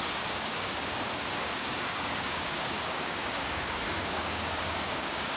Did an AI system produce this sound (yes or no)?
yes